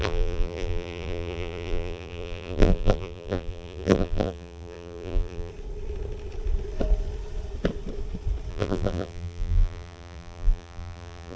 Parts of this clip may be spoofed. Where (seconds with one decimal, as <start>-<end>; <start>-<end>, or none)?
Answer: 0.0-5.5; 8.5-11.4